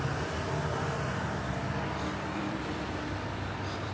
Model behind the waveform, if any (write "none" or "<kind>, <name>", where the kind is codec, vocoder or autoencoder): vocoder, BigVGAN v2